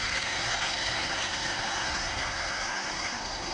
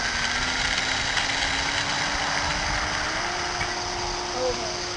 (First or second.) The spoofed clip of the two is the first